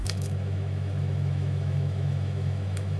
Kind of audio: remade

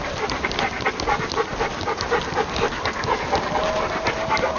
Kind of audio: recorded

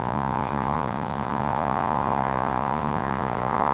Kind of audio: remade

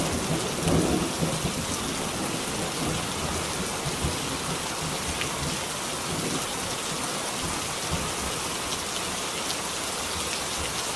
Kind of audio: recorded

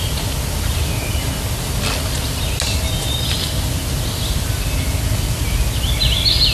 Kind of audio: recorded